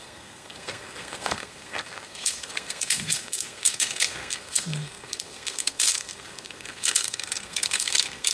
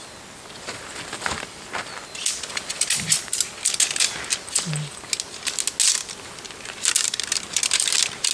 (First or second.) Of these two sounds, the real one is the second